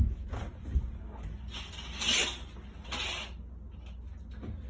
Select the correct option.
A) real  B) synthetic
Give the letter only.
A